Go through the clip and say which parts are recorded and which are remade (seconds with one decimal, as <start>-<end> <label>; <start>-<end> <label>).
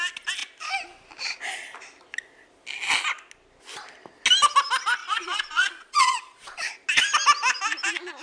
0.0-5.0 recorded; 5.0-6.7 remade; 6.7-8.2 recorded